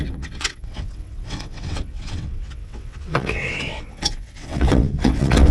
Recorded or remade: remade